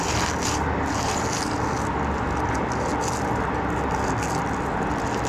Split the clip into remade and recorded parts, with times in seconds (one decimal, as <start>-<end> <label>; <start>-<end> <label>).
0.0-5.3 recorded